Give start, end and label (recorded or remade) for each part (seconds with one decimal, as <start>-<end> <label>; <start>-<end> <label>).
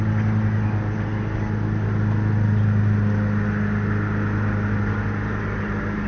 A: 0.0-6.1 recorded